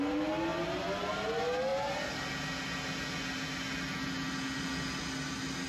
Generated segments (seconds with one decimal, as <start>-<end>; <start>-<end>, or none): none